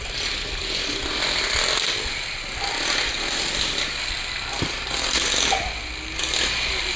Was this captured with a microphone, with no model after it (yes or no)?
yes